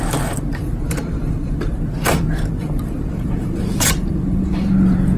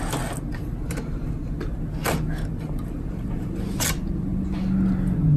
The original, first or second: second